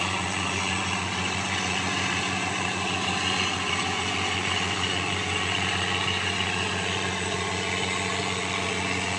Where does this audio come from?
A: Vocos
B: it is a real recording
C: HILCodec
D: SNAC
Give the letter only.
A